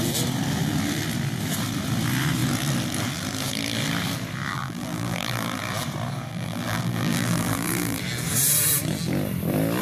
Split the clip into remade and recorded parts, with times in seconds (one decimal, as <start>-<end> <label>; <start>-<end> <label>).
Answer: 0.0-4.5 recorded; 4.5-5.6 remade; 5.6-6.3 recorded; 6.3-8.0 remade; 8.0-9.8 recorded